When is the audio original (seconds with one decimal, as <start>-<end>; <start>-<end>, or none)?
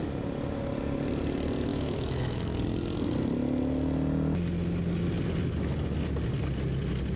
0.0-1.7; 2.6-7.2